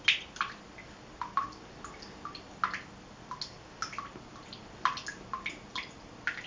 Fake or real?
real